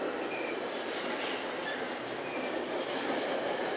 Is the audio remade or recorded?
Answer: recorded